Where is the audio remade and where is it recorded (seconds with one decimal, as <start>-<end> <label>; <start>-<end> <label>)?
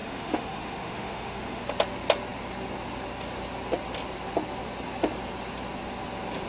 0.0-1.6 remade; 1.6-6.5 recorded